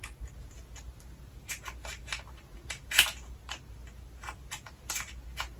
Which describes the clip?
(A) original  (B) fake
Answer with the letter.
A